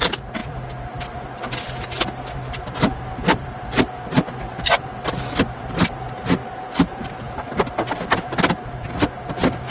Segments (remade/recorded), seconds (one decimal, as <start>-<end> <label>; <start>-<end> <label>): 0.0-9.7 recorded